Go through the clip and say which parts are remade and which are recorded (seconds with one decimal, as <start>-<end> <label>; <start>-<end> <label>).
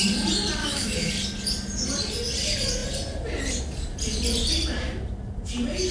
0.0-0.6 recorded; 0.6-1.1 remade; 1.1-5.9 recorded